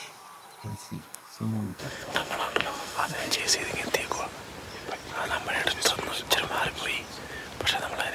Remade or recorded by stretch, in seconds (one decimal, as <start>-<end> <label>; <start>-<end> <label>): 0.0-0.7 recorded; 0.7-3.4 remade; 3.4-8.1 recorded